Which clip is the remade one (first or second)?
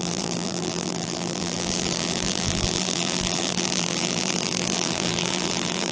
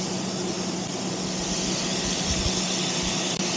first